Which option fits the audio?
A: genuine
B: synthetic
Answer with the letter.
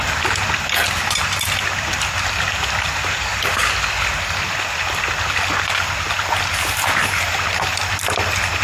A